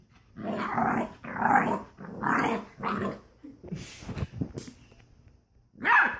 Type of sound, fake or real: real